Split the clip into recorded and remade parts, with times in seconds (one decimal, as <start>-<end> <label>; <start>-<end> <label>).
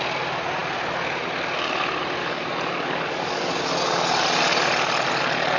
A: 0.0-2.2 recorded; 2.2-3.5 remade; 3.5-5.6 recorded